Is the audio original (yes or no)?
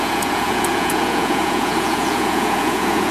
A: no